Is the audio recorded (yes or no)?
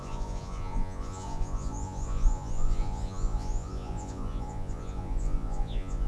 no